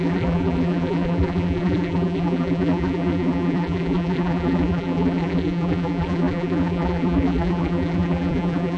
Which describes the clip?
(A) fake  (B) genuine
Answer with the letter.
A